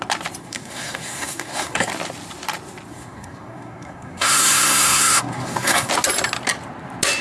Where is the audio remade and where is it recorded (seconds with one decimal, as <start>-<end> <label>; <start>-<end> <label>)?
0.0-0.4 recorded; 0.4-1.9 remade; 1.9-2.9 recorded; 2.9-5.9 remade; 5.9-7.2 recorded